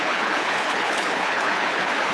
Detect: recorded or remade remade